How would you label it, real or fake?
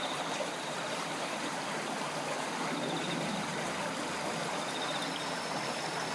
real